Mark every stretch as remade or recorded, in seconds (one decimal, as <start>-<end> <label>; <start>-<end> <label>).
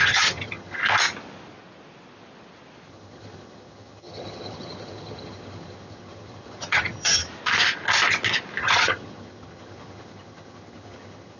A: 0.0-0.8 remade; 0.8-2.9 recorded; 2.9-7.2 remade; 7.2-8.6 recorded; 8.6-11.4 remade